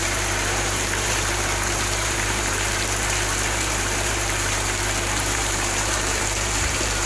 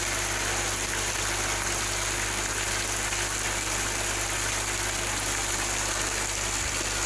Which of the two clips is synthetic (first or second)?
first